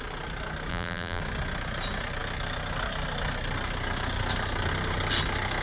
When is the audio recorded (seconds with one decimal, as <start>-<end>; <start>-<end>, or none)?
0.0-0.7; 1.2-5.6